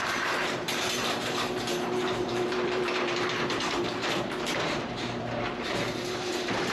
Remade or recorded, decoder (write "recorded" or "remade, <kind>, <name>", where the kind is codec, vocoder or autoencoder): remade, vocoder, BigVGAN v2